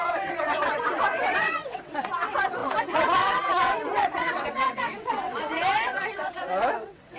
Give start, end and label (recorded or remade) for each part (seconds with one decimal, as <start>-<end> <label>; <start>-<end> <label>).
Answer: 0.0-7.2 remade